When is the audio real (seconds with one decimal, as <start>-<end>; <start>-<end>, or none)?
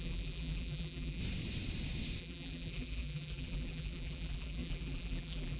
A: 1.2-2.2